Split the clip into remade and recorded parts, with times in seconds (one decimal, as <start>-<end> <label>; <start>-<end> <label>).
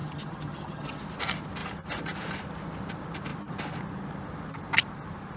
0.0-1.0 remade; 1.0-5.4 recorded